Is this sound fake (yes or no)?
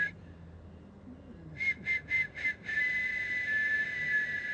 no